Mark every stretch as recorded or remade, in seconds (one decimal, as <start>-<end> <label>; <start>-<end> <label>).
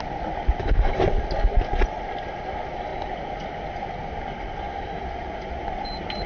0.0-4.0 recorded; 4.0-6.3 remade